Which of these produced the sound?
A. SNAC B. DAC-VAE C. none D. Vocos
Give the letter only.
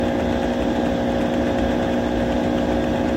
C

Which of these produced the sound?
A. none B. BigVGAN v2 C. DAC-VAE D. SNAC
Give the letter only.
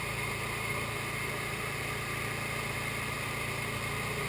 A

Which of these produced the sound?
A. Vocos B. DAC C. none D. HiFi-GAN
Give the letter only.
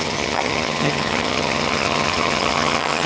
D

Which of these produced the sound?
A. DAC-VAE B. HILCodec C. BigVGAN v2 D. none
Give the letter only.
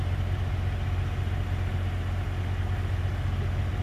D